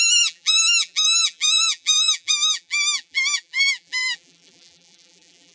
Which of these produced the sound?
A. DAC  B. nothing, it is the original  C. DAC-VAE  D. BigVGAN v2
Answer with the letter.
D